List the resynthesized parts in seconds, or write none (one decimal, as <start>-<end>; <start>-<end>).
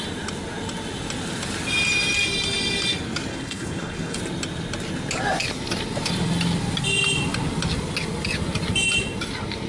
3.3-4.2